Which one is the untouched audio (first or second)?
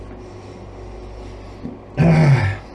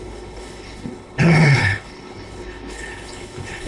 first